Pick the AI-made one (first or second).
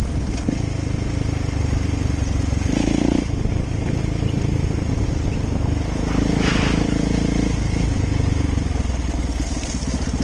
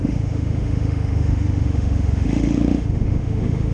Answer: second